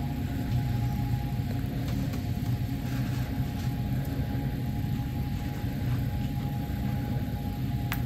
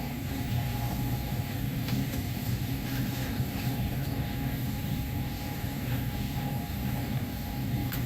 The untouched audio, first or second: first